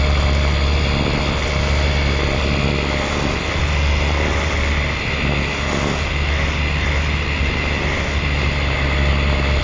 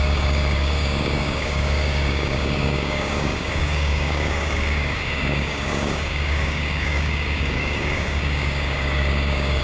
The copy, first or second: second